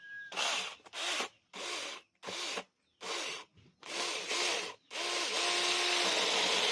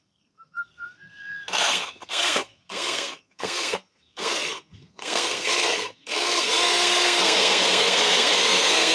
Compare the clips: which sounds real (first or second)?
first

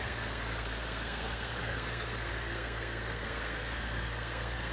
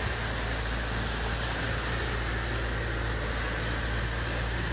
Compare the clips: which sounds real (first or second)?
second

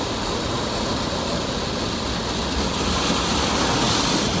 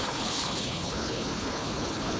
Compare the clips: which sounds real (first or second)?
first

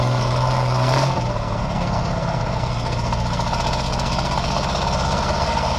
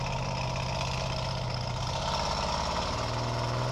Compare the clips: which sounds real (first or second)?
second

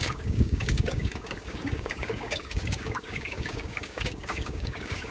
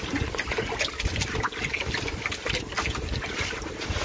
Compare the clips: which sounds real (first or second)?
second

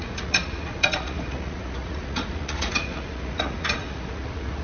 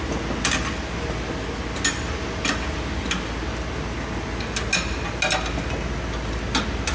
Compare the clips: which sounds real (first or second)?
second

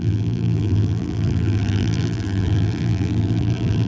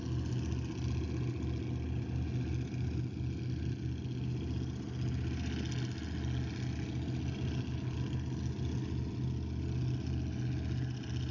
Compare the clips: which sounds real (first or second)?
second